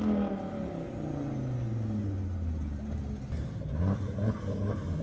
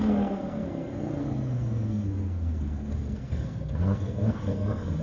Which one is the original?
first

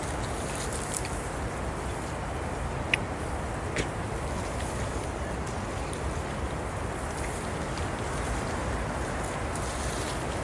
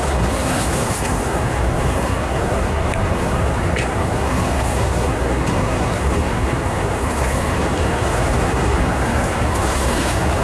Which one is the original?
first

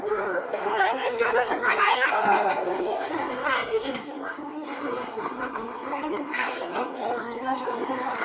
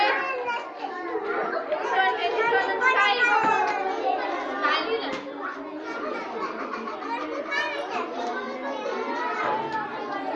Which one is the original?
second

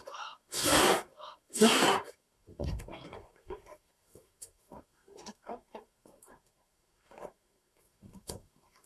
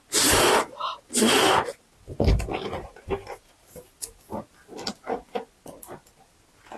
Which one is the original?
second